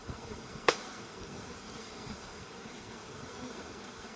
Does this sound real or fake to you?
fake